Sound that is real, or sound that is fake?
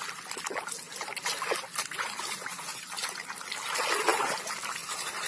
real